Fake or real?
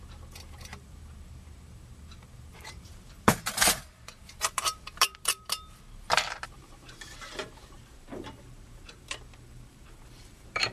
fake